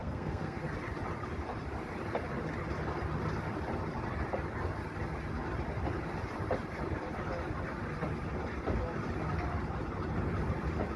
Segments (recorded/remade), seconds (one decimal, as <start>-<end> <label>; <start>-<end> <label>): 0.0-0.6 remade; 0.6-11.0 recorded